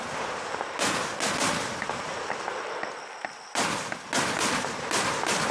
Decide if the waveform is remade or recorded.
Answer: recorded